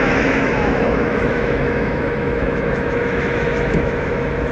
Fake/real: fake